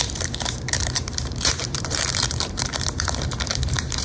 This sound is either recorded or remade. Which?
remade